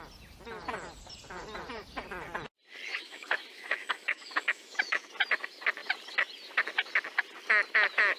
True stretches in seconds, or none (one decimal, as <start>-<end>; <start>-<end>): 0.0-2.9; 5.1-8.2

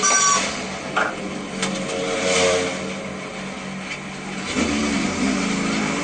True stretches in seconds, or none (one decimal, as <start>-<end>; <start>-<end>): 0.0-6.0